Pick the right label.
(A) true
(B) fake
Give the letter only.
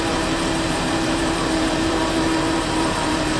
B